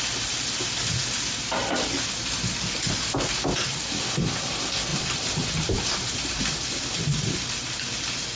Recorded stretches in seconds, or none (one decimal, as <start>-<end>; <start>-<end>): 0.0-4.9; 6.4-8.4